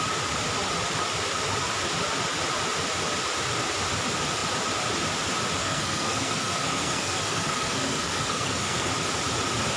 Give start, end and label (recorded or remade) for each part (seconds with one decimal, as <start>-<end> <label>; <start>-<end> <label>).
0.0-5.6 recorded; 5.6-8.9 remade; 8.9-9.8 recorded